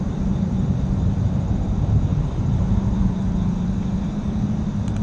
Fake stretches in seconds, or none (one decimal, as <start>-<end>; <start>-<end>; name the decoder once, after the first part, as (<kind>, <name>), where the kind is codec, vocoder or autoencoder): 0.0-5.0 (vocoder, BigVGAN v2)

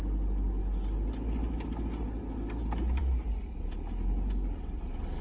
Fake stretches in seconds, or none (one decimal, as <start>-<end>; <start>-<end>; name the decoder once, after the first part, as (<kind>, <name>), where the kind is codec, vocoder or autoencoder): 3.0-3.6 (vocoder, BigVGAN v2)

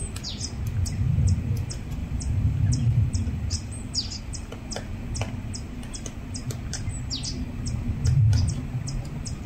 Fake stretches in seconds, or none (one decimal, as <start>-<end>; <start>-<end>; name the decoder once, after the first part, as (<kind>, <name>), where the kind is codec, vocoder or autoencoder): 2.0-4.5 (vocoder, BigVGAN v2)

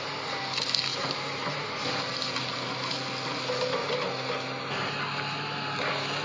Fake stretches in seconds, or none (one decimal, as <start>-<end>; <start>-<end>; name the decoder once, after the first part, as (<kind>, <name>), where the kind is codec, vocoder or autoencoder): 0.9-1.9 (vocoder, BigVGAN v2)

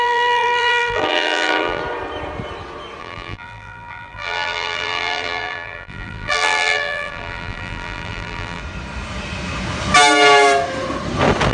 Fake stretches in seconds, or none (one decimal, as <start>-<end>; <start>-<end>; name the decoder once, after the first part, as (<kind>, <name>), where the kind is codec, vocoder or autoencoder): 0.0-1.8 (vocoder, BigVGAN v2); 3.0-8.6

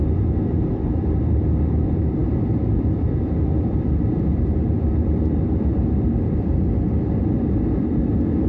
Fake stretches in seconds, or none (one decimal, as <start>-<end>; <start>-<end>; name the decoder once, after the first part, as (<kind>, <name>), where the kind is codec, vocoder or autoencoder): 0.0-8.5 (vocoder, BigVGAN v2)

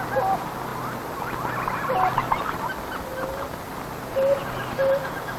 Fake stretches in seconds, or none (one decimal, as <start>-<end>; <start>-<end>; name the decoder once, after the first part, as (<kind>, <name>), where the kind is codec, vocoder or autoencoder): none